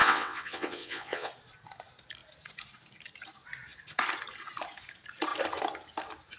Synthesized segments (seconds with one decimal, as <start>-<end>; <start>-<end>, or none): 0.0-1.3